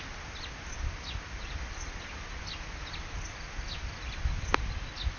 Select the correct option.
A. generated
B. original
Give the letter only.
B